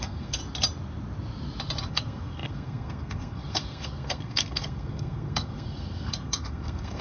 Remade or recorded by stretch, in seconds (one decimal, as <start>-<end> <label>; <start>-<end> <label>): 0.0-0.4 remade; 0.4-1.9 recorded; 1.9-7.0 remade